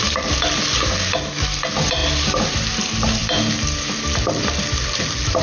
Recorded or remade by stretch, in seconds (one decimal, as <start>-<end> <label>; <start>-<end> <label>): 0.0-5.4 recorded